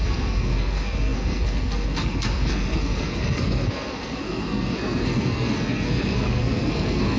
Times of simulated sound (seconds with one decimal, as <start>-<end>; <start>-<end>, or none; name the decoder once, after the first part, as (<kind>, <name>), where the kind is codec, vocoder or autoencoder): 0.0-7.2 (codec, SNAC)